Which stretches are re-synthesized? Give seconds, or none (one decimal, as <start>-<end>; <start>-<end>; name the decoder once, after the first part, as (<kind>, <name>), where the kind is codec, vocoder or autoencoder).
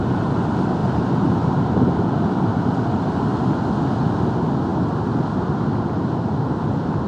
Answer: 0.8-2.8 (vocoder, BigVGAN v2)